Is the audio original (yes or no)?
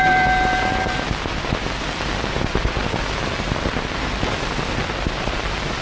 yes